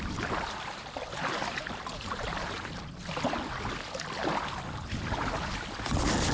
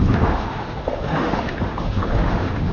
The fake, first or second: second